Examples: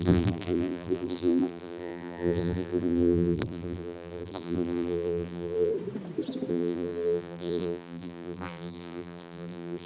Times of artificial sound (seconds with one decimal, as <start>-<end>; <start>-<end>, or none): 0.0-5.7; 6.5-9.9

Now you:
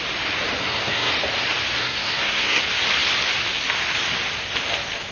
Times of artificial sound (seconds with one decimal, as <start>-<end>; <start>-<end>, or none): 0.6-1.1; 1.8-2.6

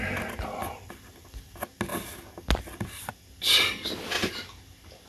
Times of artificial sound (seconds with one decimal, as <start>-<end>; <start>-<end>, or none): none